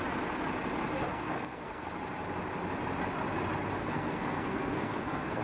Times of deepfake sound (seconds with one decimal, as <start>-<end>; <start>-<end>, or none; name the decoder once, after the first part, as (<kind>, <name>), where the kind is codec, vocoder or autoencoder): 1.1-1.9 (codec, SNAC); 3.8-5.4